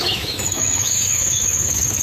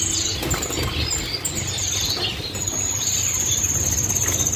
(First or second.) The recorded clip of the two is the second